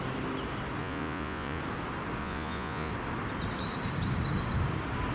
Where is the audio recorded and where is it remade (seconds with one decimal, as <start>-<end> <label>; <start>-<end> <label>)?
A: 0.0-0.8 recorded; 0.8-1.6 remade; 1.6-2.2 recorded; 2.2-2.9 remade; 2.9-5.1 recorded